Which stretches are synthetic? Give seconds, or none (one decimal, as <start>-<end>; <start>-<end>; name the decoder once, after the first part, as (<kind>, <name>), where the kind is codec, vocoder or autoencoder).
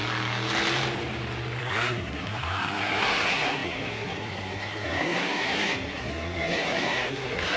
1.6-7.6 (codec, SNAC)